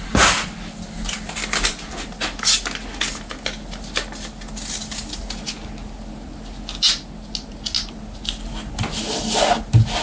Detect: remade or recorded recorded